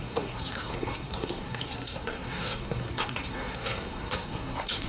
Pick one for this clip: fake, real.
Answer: fake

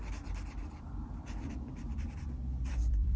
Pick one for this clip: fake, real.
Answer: fake